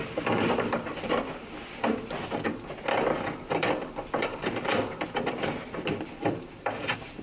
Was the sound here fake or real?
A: fake